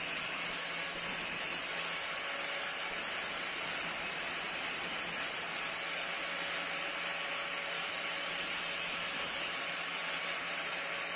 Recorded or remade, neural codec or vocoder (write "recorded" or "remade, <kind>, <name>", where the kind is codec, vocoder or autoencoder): recorded